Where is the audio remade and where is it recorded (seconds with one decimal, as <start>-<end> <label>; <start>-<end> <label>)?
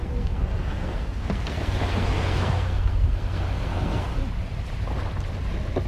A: 0.0-4.2 remade; 4.2-5.9 recorded